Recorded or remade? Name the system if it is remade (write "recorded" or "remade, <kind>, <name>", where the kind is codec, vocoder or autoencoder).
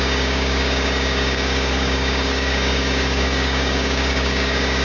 remade, codec, DAC